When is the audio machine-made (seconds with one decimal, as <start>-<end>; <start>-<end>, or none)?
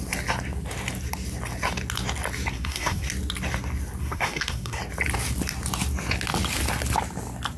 2.5-3.1; 4.0-4.8